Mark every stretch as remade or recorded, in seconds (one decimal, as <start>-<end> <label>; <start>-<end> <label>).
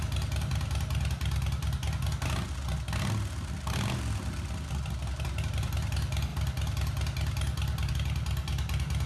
0.0-9.1 recorded